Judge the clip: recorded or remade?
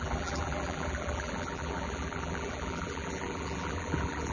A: remade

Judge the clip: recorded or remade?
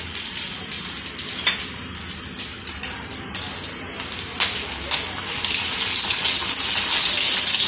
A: recorded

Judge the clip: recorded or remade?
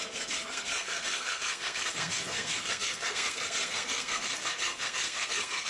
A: remade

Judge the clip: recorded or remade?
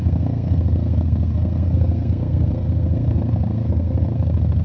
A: remade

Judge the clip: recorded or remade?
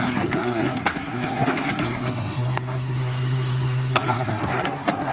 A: remade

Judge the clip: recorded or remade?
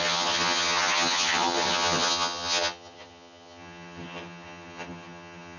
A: remade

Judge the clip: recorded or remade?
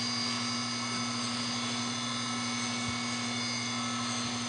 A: recorded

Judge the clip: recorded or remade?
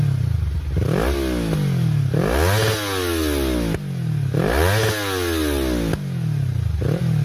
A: recorded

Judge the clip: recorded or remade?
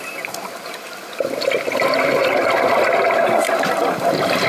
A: recorded